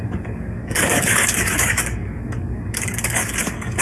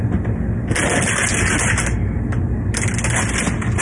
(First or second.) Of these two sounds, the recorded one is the second